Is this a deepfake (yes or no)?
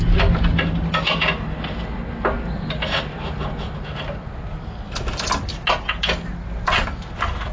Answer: no